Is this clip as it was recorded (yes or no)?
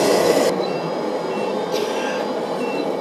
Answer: yes